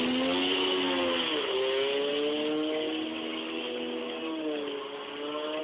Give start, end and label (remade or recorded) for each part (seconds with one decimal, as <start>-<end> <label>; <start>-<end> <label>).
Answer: 0.0-5.6 recorded